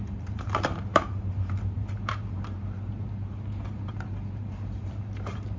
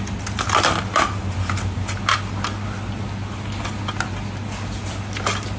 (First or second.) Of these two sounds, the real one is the second